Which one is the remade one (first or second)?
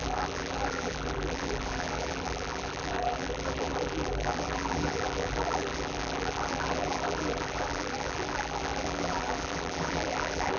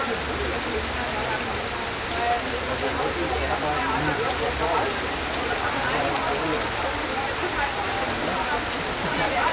first